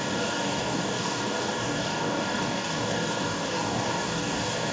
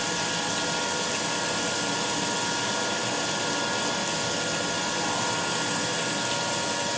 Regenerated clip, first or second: first